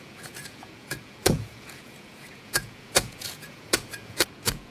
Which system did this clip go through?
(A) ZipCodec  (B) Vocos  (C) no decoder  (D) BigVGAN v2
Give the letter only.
B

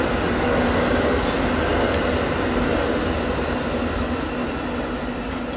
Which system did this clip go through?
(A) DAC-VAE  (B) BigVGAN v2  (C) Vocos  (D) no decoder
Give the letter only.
D